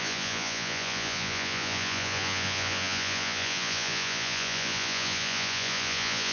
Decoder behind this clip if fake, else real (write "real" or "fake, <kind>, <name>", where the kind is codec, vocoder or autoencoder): fake, vocoder, Vocos